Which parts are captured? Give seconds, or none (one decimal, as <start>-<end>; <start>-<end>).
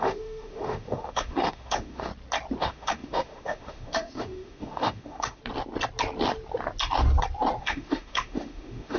2.1-2.6; 5.4-7.6